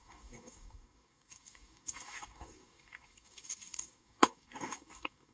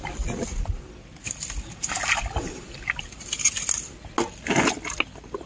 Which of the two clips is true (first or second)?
second